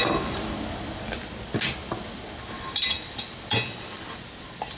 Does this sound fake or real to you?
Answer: real